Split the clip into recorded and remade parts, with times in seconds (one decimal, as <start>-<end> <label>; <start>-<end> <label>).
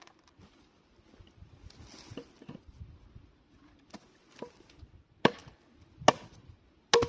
0.0-7.1 recorded